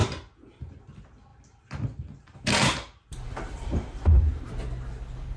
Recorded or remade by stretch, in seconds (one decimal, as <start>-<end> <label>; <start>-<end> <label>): 0.0-1.3 recorded; 1.3-4.5 remade; 4.5-5.4 recorded